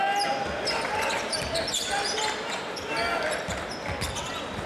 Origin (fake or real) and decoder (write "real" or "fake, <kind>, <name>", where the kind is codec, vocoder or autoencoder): real